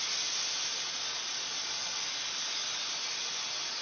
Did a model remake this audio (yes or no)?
no